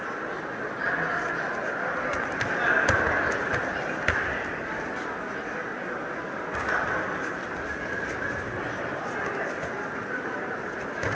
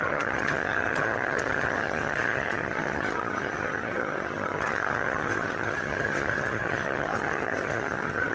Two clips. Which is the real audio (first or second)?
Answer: first